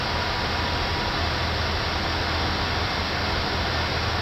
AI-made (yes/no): no